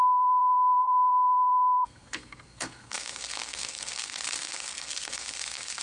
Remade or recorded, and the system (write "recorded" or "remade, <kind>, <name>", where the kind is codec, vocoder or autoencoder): remade, codec, SNAC